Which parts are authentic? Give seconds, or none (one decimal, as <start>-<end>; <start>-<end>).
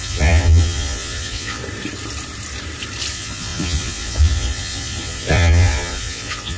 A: 1.6-3.1